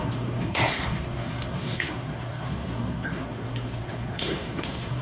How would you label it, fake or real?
fake